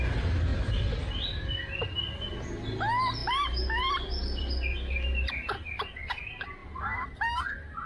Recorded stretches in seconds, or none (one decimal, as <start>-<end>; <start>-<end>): 0.0-0.5; 1.1-3.2; 5.3-7.9